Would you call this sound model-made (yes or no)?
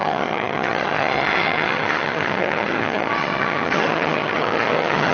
yes